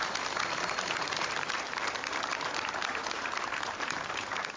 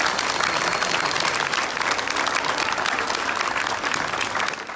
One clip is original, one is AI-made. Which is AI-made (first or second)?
first